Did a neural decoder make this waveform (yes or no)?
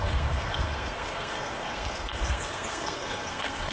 yes